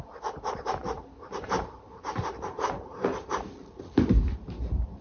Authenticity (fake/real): fake